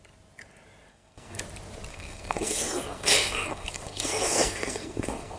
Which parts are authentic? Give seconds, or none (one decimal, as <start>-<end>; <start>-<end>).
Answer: 0.0-0.9; 1.4-1.9